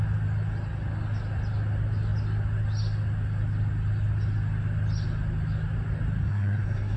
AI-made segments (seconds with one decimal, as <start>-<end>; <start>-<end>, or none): 6.2-7.0